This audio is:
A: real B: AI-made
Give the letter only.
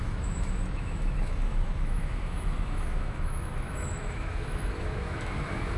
B